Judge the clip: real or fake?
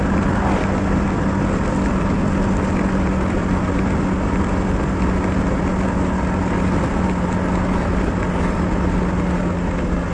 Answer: real